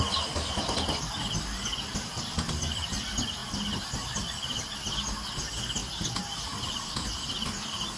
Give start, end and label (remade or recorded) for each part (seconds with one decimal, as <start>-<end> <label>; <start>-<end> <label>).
0.0-8.0 recorded